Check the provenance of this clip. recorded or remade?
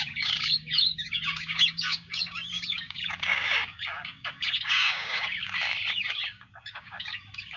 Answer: remade